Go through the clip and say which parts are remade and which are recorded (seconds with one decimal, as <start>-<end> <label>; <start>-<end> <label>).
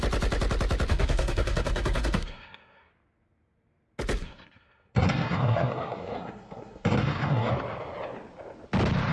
0.0-0.9 recorded; 0.9-2.9 remade; 2.9-4.2 recorded; 4.2-7.5 remade; 7.5-9.1 recorded